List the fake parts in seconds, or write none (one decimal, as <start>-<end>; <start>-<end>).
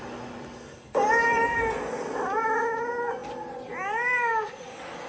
none